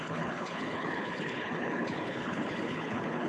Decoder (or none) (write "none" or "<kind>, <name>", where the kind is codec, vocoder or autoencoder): codec, HILCodec